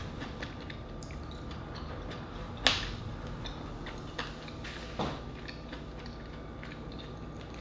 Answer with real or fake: real